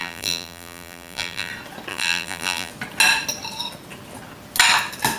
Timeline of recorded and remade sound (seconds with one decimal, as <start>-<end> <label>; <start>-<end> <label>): 0.0-1.5 remade; 1.5-1.9 recorded; 1.9-2.7 remade; 2.7-5.2 recorded